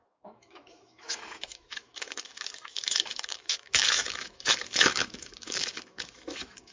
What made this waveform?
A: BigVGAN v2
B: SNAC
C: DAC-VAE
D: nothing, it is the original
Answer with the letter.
C